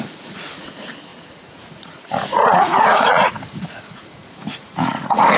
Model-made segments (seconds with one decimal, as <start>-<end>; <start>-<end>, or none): 0.0-5.4